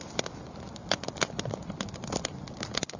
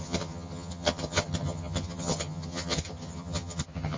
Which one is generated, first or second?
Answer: second